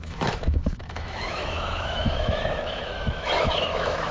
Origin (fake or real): fake